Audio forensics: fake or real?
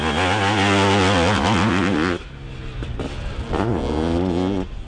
real